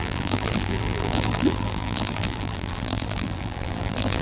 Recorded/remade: remade